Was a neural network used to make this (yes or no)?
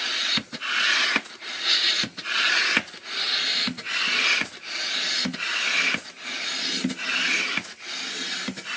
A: no